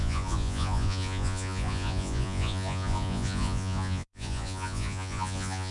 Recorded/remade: remade